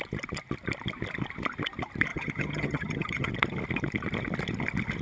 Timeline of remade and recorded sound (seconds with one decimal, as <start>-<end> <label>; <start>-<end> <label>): 0.0-2.1 recorded; 2.1-3.3 remade; 3.3-5.0 recorded